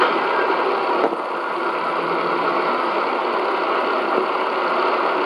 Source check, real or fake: real